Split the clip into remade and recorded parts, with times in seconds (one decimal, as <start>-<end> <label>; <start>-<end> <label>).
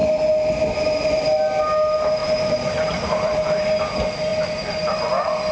0.0-2.2 recorded; 2.2-3.8 remade; 3.8-4.3 recorded; 4.3-5.1 remade; 5.1-5.5 recorded